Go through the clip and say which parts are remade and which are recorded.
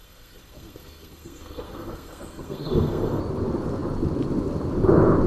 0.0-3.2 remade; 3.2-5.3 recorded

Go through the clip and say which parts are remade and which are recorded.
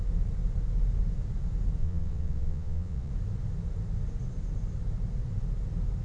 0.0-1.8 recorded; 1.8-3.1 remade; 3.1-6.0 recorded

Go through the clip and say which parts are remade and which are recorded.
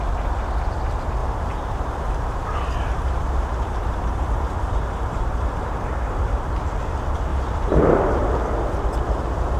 0.0-1.2 recorded; 1.2-6.3 remade; 6.3-7.3 recorded; 7.3-8.2 remade; 8.2-9.6 recorded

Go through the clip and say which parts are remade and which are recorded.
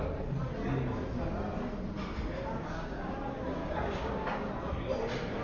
0.0-2.5 recorded; 2.5-3.1 remade; 3.1-3.6 recorded; 3.6-4.5 remade; 4.5-5.4 recorded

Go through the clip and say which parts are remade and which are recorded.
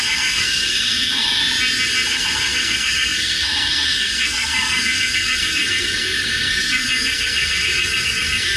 0.0-1.4 remade; 1.4-2.1 recorded; 2.1-8.6 remade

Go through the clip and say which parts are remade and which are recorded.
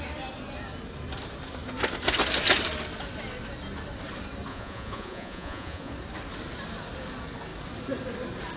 0.0-4.5 recorded; 4.5-5.9 remade; 5.9-8.6 recorded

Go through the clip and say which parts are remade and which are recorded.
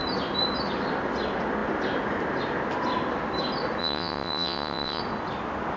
0.0-3.8 recorded; 3.8-5.0 remade; 5.0-5.8 recorded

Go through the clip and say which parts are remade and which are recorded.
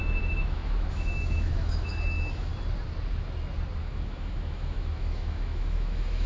0.0-2.5 remade; 2.5-3.8 recorded; 3.8-6.3 remade